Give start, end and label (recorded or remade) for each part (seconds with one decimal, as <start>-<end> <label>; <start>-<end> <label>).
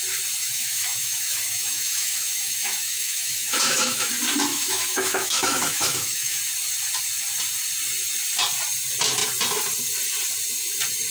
0.0-0.4 recorded; 0.4-4.1 remade; 4.1-4.5 recorded; 4.5-6.4 remade; 6.4-11.1 recorded